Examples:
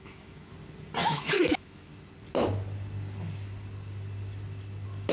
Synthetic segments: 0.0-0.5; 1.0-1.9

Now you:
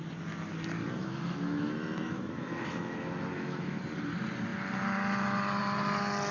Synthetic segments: 1.0-3.8

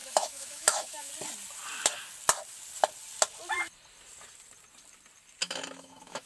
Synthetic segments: 0.0-1.1; 5.4-6.3

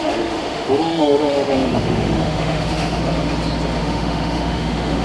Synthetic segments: 0.0-3.0; 3.8-5.0

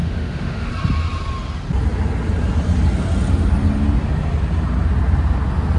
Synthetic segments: 0.0-0.7